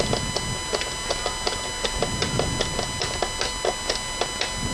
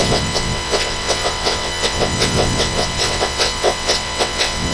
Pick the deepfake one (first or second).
second